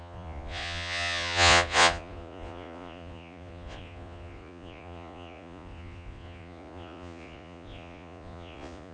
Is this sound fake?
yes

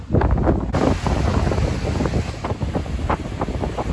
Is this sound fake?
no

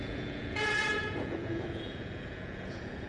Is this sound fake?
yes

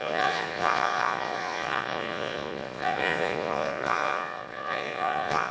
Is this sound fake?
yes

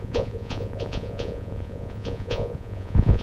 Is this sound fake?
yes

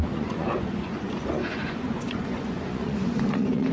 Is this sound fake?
yes